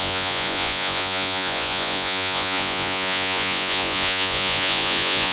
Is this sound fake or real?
fake